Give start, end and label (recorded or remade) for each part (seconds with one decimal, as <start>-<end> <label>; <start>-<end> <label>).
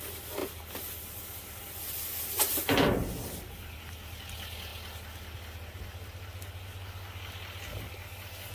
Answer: 0.0-8.5 recorded